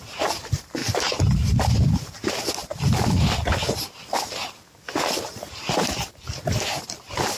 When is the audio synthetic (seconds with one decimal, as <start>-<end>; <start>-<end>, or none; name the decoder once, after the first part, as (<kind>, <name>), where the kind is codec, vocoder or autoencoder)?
0.0-0.8 (vocoder, BigVGAN v2); 1.6-2.6; 7.0-7.4